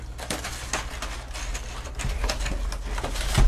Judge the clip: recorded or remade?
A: recorded